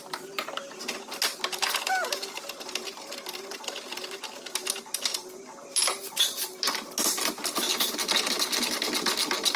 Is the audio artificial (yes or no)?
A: no